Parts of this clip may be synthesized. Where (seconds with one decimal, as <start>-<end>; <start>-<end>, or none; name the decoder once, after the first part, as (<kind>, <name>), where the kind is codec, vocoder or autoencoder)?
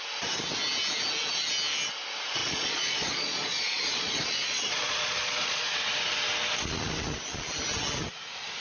2.4-5.8 (vocoder, Vocos)